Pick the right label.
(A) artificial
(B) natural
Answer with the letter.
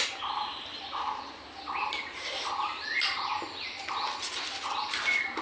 B